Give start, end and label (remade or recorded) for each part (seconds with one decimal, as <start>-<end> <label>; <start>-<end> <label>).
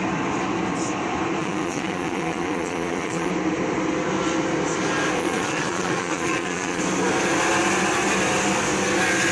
0.0-1.4 recorded; 1.4-3.3 remade; 3.3-5.2 recorded; 5.2-6.8 remade; 6.8-9.3 recorded